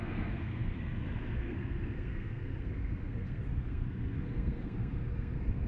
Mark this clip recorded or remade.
remade